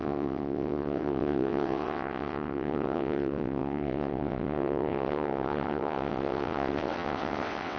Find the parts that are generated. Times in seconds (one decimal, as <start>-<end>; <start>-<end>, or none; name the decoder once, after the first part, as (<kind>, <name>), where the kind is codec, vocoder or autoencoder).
0.0-7.8 (vocoder, WaveNeXt)